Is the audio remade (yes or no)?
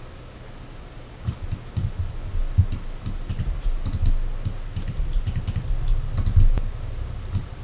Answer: no